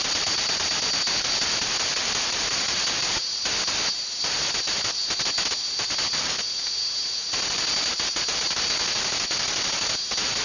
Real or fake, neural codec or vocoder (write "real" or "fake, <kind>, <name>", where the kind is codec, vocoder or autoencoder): real